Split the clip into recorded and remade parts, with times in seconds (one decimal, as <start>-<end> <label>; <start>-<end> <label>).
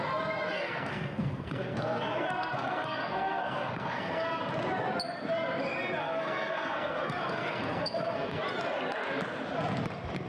0.0-0.5 recorded; 0.5-4.4 remade; 4.4-6.0 recorded; 6.0-8.4 remade; 8.4-10.3 recorded